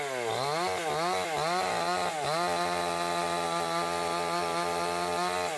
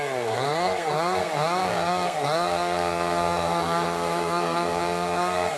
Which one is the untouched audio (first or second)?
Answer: first